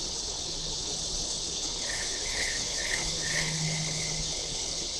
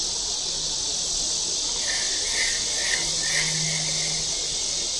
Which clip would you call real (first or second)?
second